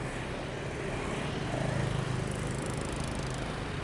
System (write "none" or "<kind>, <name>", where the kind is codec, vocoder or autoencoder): none